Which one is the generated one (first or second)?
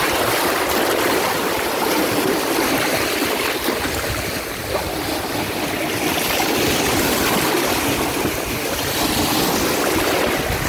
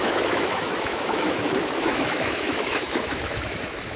second